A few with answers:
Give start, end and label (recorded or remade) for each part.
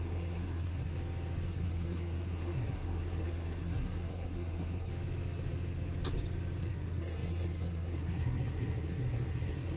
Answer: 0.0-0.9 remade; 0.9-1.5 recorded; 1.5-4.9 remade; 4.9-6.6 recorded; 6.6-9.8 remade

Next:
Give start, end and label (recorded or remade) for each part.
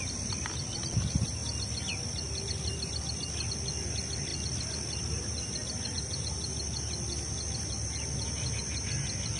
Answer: 0.0-9.4 recorded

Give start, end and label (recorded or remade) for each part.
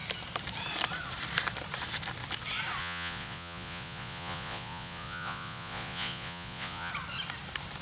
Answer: 0.0-2.8 recorded; 2.8-6.9 remade; 6.9-7.8 recorded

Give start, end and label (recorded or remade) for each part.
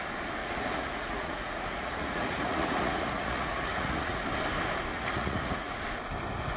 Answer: 0.0-0.4 recorded; 0.4-4.2 remade; 4.2-4.9 recorded; 4.9-5.8 remade; 5.8-6.6 recorded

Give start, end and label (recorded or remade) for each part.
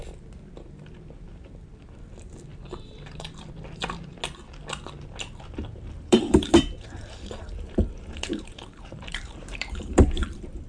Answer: 0.0-2.5 recorded; 2.5-3.5 remade; 3.5-5.6 recorded; 5.6-10.7 remade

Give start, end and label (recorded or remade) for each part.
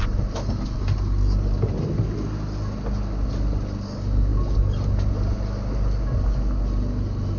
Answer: 0.0-7.4 recorded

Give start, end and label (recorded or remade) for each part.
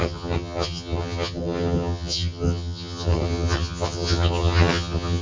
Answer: 0.0-5.2 remade